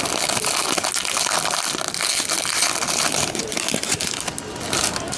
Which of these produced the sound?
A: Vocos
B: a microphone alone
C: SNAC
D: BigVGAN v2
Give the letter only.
B